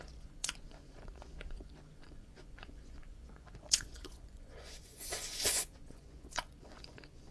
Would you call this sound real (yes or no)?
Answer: no